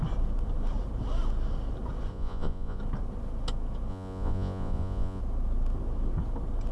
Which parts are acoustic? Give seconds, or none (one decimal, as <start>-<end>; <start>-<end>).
0.0-2.1; 2.8-3.9; 5.2-6.7